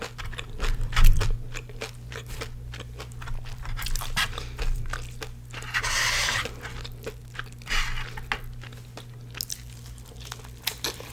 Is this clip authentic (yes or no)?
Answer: yes